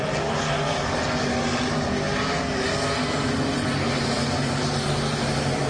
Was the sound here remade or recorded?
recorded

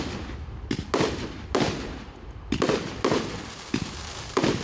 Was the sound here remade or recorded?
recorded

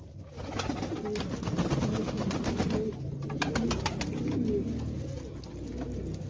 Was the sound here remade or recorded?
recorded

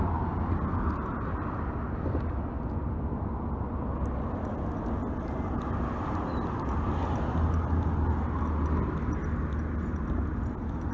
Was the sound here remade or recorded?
recorded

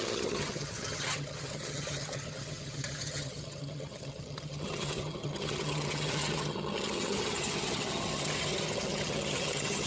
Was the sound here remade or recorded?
remade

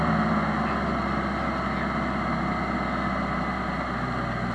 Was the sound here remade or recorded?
recorded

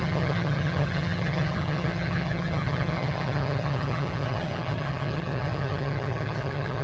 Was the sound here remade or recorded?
remade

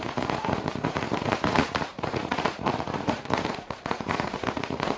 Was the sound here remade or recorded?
remade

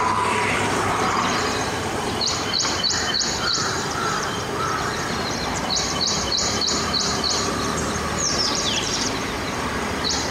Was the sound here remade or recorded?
remade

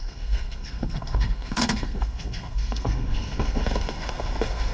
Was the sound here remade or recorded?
remade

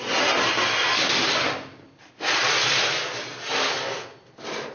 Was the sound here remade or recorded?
recorded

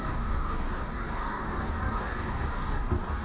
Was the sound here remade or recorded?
remade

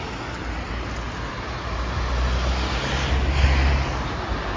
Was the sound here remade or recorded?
recorded